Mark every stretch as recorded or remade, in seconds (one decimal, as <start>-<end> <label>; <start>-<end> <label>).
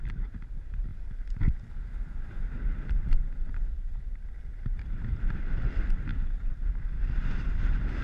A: 0.0-6.1 remade; 6.1-6.8 recorded; 6.8-8.0 remade